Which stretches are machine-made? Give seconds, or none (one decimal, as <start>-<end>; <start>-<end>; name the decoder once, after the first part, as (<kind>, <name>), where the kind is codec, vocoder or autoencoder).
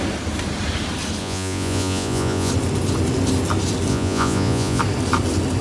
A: 1.2-2.5 (vocoder, Vocos); 3.9-4.8